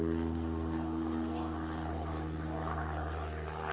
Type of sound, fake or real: fake